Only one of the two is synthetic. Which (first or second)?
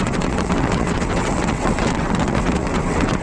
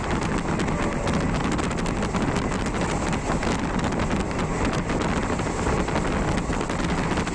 first